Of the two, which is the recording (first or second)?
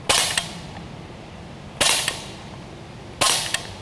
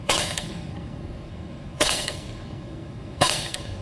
first